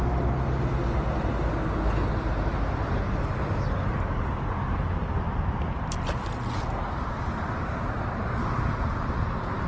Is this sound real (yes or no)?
yes